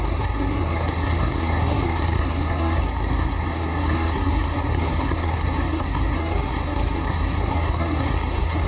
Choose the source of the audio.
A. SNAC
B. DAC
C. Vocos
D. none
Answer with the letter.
A